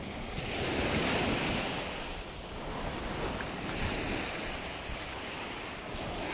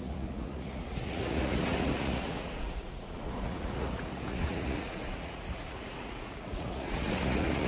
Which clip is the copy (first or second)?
second